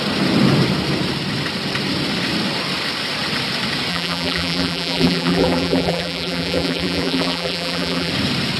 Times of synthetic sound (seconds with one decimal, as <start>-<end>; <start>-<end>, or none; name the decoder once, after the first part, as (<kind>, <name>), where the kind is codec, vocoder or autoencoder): 3.9-8.1 (vocoder, BigVGAN v2)